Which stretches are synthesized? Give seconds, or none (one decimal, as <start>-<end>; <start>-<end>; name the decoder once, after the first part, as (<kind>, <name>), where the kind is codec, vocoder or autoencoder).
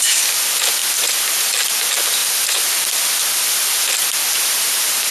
none